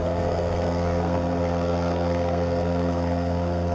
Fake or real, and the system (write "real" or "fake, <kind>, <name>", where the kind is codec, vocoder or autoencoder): fake, codec, SNAC